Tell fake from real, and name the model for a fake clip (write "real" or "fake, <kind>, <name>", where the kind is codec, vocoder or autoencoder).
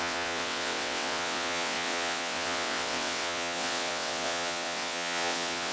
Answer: fake, vocoder, WaveNeXt